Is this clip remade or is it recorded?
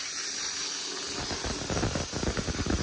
recorded